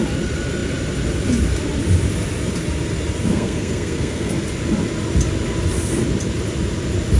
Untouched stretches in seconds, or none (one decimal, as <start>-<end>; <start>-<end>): 0.0-3.3; 4.3-7.2